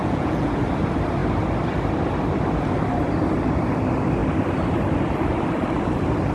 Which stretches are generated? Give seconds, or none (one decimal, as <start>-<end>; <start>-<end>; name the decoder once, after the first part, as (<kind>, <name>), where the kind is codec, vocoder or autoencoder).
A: 0.0-0.6 (vocoder, Vocos)